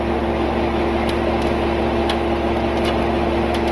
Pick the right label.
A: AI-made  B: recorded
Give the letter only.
B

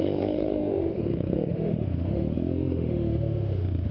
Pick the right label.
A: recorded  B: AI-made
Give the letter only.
B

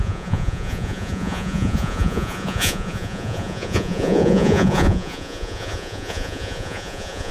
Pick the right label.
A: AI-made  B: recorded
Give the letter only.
A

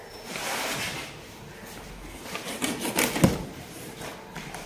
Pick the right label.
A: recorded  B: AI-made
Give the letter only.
A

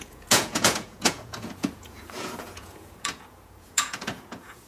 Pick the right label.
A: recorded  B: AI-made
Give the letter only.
B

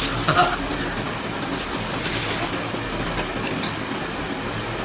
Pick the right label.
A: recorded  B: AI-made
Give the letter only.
A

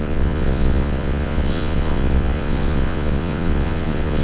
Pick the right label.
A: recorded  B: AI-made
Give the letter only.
B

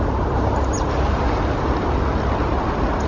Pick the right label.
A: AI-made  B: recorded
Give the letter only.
B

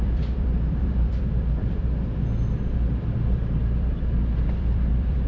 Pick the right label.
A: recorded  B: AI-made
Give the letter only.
B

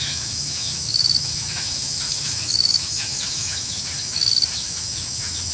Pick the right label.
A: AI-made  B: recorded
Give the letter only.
A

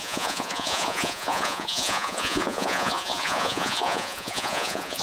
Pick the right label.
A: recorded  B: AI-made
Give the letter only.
B